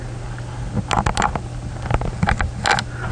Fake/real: real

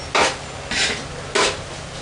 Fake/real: real